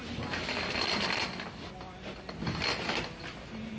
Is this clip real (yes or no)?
yes